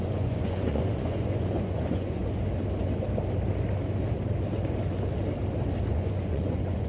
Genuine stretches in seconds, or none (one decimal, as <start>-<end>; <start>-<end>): 2.2-5.9

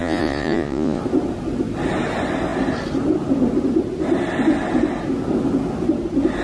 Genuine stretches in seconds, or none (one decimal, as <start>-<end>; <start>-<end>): 1.0-6.4

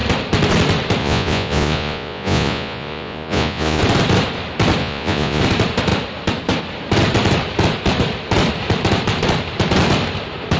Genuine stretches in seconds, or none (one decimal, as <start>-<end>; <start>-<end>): 0.0-1.0; 3.8-4.8; 5.4-10.6

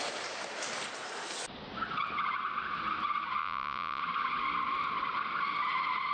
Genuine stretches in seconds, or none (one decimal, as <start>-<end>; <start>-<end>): 0.0-3.4; 4.0-6.1

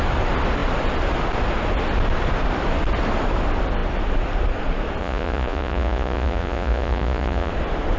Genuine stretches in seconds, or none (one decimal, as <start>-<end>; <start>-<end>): 0.0-5.0; 7.5-8.0

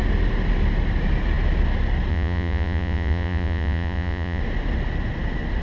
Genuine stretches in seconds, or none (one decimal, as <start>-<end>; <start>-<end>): 0.0-2.1; 4.4-5.6

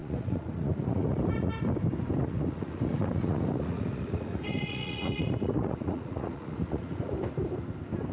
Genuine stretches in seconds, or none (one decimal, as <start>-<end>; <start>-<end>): 1.5-2.2; 7.1-8.1

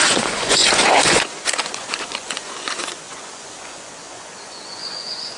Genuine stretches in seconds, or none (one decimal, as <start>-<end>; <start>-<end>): none